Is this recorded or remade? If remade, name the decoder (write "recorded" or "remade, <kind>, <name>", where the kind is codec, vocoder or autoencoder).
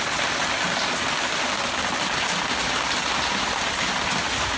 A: recorded